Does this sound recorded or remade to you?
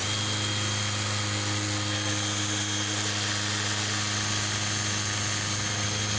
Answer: recorded